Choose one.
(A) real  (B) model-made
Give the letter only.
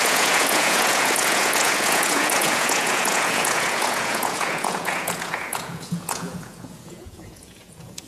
B